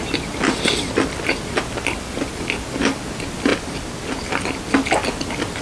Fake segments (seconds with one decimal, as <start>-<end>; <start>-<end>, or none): none